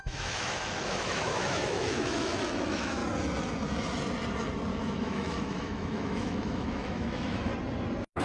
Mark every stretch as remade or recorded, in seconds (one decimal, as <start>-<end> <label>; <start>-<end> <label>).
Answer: 0.0-3.0 remade; 3.0-4.8 recorded; 4.8-7.5 remade; 7.5-8.2 recorded